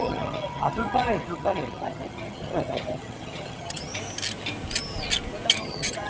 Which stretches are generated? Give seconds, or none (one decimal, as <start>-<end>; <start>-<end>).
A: 0.0-3.9; 5.6-6.1